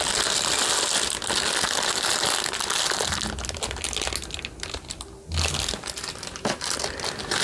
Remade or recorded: recorded